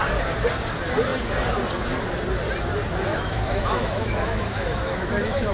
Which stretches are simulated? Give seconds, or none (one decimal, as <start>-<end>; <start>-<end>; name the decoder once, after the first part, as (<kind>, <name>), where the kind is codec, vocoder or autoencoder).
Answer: 3.1-5.5 (autoencoder, DAC-VAE)

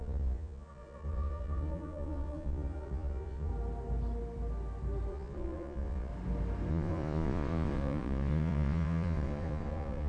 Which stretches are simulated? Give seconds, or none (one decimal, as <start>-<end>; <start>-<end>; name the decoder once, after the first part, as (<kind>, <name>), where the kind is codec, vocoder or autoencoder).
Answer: 0.0-3.5 (vocoder, Vocos); 5.1-6.1; 6.7-10.1

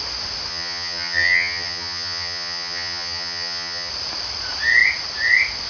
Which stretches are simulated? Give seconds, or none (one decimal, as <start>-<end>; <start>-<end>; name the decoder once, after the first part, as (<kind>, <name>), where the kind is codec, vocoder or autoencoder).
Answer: 0.5-3.9 (vocoder, HiFi-GAN)